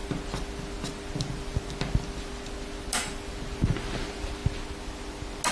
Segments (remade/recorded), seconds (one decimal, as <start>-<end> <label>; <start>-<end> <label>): 0.0-5.5 recorded